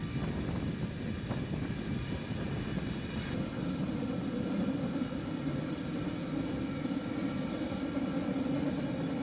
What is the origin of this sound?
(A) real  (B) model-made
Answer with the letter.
A